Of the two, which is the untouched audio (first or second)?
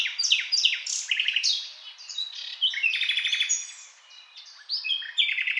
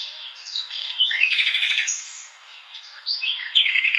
first